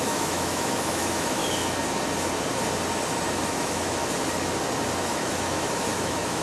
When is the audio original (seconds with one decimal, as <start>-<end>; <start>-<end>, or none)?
1.4-3.4; 4.0-5.0